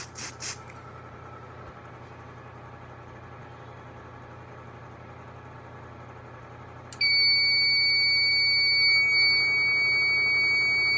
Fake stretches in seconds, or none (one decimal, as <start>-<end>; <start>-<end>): none